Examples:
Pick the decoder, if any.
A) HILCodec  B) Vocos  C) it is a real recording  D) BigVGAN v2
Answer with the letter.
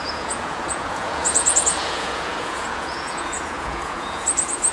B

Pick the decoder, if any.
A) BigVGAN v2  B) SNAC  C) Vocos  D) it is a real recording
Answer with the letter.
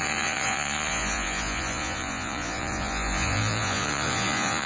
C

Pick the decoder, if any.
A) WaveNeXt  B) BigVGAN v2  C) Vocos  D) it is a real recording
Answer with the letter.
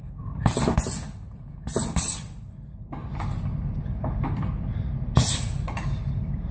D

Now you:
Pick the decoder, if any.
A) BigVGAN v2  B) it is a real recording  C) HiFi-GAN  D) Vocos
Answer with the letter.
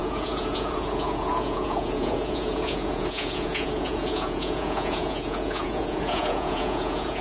D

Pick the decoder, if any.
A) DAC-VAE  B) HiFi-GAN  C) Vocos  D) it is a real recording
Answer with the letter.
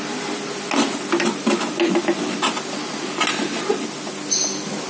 D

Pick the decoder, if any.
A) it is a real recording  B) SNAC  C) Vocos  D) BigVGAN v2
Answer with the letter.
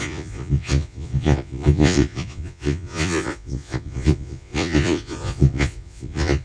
C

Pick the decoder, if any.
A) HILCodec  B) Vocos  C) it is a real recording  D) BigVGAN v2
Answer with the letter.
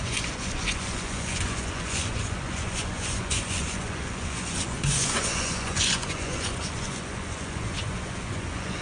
B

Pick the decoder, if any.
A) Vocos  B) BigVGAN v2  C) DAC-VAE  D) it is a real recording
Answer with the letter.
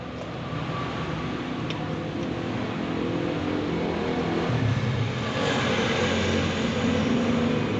D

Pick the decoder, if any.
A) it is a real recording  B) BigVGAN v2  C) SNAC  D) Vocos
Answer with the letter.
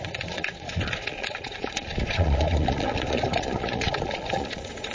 D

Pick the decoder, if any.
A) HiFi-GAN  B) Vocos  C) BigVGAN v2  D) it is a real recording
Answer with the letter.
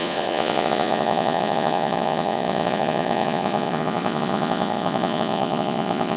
B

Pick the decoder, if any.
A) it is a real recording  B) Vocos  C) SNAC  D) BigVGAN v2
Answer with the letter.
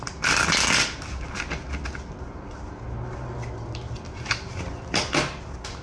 A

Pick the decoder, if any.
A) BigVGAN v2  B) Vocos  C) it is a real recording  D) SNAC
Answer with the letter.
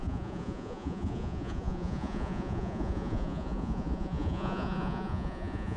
B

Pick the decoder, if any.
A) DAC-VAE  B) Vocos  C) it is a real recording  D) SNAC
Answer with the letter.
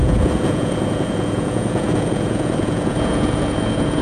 B